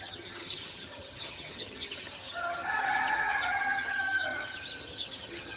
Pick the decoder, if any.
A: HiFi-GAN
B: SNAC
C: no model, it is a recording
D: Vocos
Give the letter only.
A